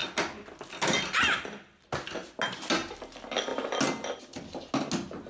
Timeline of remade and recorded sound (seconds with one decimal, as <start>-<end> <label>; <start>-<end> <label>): 0.0-5.3 recorded